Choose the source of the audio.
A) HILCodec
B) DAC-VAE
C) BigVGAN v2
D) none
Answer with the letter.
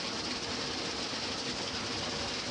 D